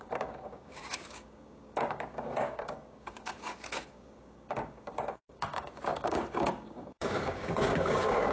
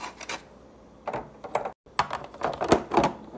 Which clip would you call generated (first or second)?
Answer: first